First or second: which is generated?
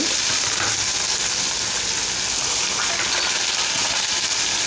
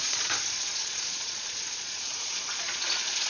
second